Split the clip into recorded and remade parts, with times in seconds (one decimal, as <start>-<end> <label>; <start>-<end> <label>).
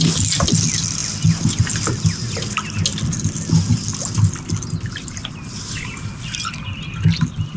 0.0-7.6 recorded